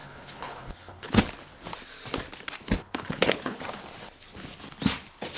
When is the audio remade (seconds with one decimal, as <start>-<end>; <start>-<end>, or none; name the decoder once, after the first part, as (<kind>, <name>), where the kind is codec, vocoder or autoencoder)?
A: 0.0-1.2 (codec, HILCodec); 2.8-3.6